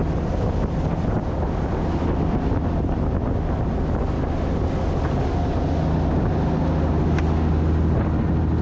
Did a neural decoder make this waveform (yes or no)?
no